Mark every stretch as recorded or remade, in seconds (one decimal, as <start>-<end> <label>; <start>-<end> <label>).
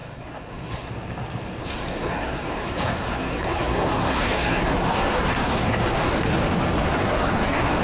0.0-0.9 remade; 0.9-1.6 recorded; 1.6-6.2 remade; 6.2-6.8 recorded; 6.8-7.8 remade